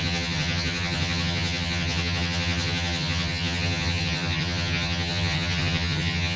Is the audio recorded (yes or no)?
no